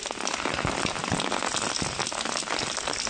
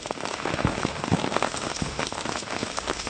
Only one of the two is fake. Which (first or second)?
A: second